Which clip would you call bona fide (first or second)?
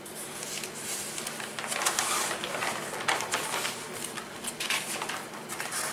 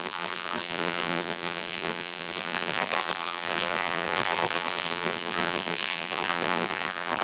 first